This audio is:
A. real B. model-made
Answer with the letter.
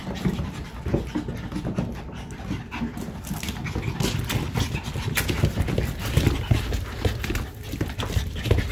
A